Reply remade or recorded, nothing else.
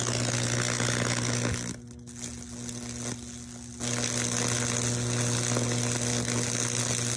recorded